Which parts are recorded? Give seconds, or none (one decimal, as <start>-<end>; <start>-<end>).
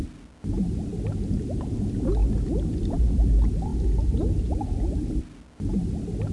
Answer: 0.0-2.2; 3.2-6.3